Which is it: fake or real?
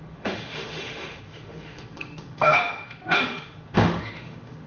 fake